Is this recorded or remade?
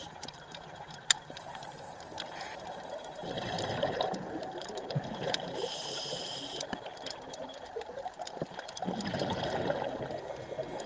remade